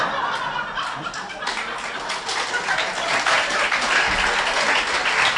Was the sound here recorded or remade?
recorded